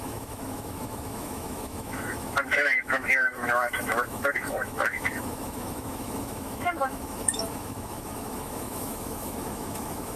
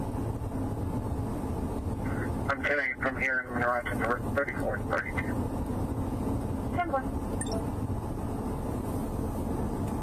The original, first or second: second